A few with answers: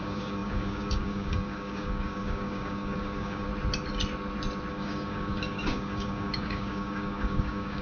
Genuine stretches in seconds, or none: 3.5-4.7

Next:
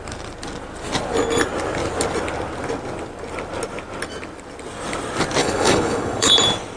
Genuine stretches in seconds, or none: 0.0-5.4; 6.3-6.8

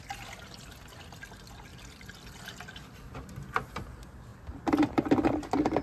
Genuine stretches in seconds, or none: 0.0-1.7; 3.7-4.3; 4.9-5.8

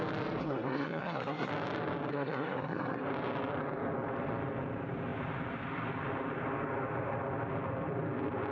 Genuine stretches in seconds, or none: 0.0-0.4; 1.5-2.1; 3.0-8.5

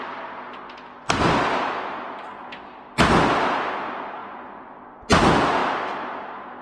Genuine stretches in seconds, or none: 0.0-4.2; 4.7-6.6

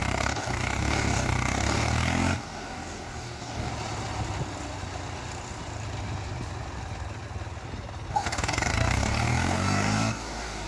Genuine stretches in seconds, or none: 3.7-8.1

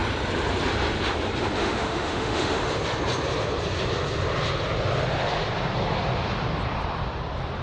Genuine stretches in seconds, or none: 0.0-1.6; 2.6-7.6